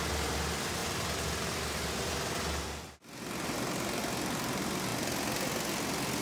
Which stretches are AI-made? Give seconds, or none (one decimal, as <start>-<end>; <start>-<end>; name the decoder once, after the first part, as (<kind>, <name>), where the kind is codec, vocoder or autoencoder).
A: none

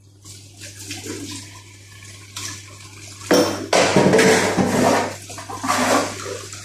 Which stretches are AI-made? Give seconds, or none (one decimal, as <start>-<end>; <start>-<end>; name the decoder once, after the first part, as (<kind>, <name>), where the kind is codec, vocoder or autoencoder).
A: none

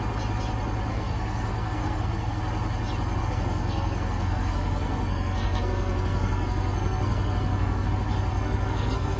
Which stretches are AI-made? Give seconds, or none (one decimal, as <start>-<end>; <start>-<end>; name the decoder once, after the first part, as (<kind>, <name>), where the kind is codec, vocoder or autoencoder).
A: 0.9-2.4 (codec, SNAC); 3.2-7.9; 8.3-9.2

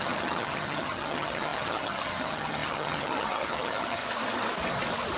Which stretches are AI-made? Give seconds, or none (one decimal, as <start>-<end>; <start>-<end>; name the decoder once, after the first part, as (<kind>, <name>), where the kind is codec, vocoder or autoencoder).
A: 0.0-4.0 (vocoder, HiFi-GAN)